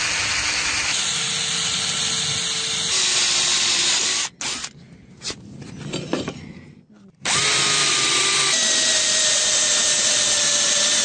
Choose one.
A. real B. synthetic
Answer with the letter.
A